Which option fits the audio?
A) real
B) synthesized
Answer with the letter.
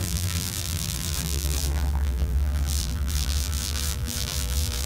B